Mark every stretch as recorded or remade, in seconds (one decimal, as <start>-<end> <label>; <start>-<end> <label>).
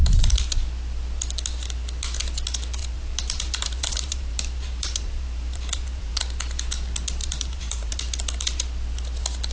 0.0-2.8 recorded; 2.8-6.2 remade; 6.2-7.2 recorded; 7.2-7.9 remade; 7.9-9.5 recorded